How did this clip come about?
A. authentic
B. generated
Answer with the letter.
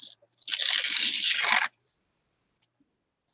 B